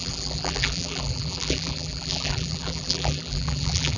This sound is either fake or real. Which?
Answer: fake